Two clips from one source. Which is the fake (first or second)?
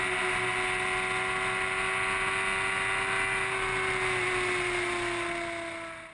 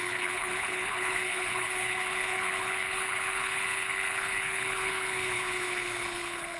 second